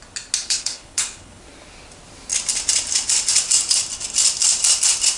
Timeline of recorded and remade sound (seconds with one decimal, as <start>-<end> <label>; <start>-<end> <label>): 0.0-0.4 recorded; 0.4-1.4 remade; 1.4-5.2 recorded